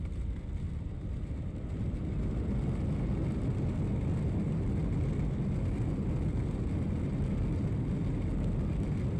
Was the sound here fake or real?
real